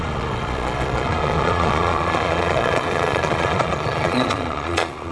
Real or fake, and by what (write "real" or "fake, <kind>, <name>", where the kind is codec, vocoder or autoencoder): fake, vocoder, Vocos